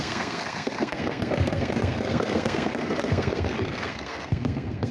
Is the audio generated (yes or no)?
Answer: yes